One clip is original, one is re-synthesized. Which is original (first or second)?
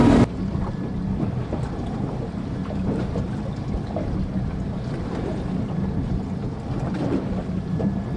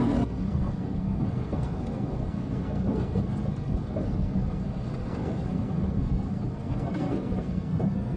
first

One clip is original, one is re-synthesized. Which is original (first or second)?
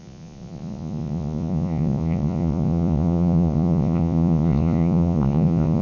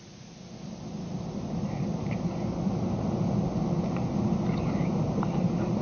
second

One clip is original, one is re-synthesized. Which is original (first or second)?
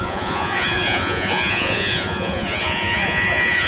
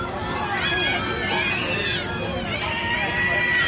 second